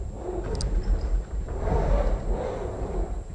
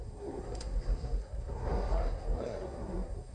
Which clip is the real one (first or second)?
first